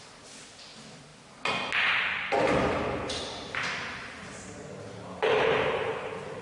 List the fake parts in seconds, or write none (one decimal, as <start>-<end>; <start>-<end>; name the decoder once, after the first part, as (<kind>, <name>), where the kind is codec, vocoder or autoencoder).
none